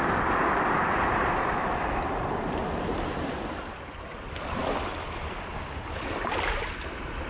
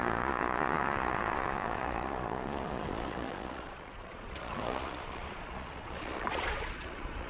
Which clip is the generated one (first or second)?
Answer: second